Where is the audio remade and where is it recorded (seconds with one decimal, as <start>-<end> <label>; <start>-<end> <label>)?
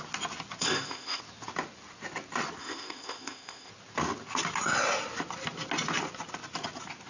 0.0-0.6 recorded; 0.6-1.2 remade; 1.2-2.6 recorded; 2.6-3.7 remade; 3.7-7.1 recorded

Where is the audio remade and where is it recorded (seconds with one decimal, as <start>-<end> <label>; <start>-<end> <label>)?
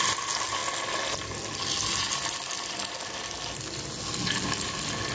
0.0-5.1 recorded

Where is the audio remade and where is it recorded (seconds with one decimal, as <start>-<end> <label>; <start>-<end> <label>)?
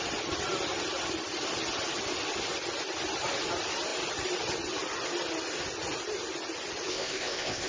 0.0-6.9 recorded; 6.9-7.7 remade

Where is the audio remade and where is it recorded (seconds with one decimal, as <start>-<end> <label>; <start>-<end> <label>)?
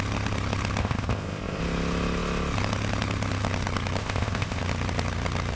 0.0-0.8 recorded; 0.8-1.6 remade; 1.6-4.0 recorded; 4.0-4.6 remade; 4.6-5.6 recorded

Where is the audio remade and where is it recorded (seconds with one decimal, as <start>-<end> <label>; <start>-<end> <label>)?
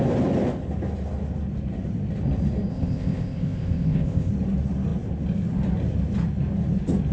0.0-2.7 recorded; 2.7-4.3 remade; 4.3-7.1 recorded